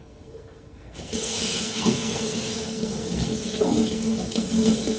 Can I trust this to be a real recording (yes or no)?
no